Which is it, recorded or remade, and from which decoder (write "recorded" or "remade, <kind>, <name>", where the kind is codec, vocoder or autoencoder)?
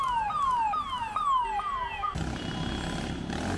recorded